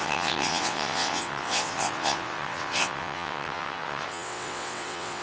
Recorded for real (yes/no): no